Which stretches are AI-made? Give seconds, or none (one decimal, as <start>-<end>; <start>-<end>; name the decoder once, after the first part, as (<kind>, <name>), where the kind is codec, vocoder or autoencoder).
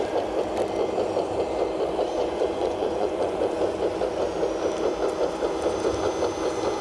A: 2.2-3.5 (vocoder, Vocos)